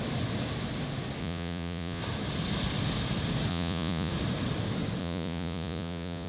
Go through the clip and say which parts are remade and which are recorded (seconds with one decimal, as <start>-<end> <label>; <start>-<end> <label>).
0.0-1.2 recorded; 1.2-2.0 remade; 2.0-3.5 recorded; 3.5-4.1 remade; 4.1-5.0 recorded; 5.0-6.3 remade